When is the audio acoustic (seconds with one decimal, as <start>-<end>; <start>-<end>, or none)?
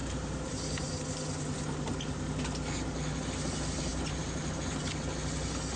1.0-5.8